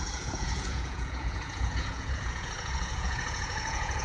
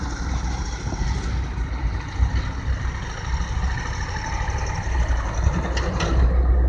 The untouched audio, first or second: second